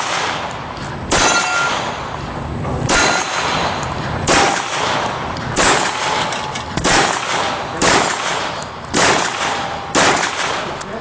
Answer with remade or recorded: recorded